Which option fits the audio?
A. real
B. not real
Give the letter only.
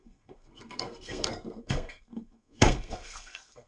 B